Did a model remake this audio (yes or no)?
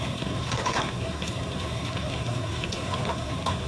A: yes